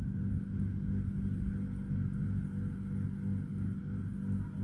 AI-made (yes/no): no